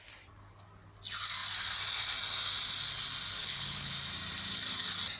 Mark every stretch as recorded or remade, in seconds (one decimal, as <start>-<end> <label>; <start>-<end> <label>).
0.0-3.4 recorded; 3.4-3.9 remade; 3.9-5.2 recorded